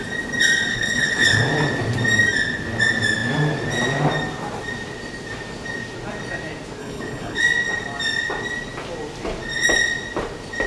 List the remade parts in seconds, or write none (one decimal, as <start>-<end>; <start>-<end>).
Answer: 0.7-1.4; 6.8-7.4